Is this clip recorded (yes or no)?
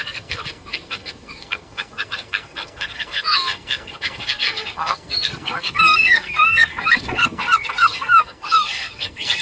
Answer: no